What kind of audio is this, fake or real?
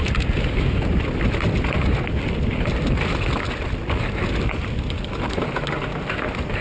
real